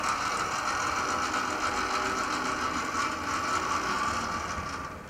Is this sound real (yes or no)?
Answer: yes